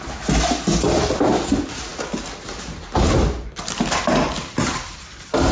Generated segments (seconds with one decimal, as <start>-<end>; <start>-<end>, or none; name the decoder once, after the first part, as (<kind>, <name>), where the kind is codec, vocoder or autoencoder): none

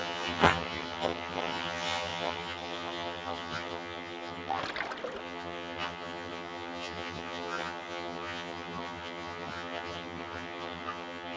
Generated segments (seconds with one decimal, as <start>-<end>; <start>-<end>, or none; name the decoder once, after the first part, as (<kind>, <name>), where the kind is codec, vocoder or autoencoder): 0.0-4.6 (vocoder, HiFi-GAN); 5.2-11.4

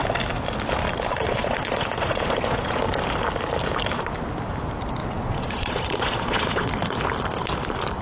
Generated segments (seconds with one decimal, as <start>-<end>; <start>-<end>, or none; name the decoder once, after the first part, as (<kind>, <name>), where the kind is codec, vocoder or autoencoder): 1.1-2.8 (vocoder, Vocos); 5.0-6.7

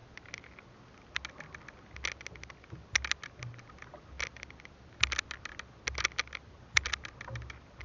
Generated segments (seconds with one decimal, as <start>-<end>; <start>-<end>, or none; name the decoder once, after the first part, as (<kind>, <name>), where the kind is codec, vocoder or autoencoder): none

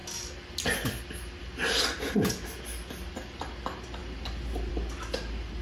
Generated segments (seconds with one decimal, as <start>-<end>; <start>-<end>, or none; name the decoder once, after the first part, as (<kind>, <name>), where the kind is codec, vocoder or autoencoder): none